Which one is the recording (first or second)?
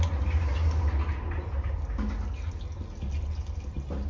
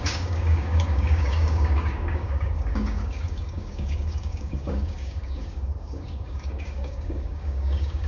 first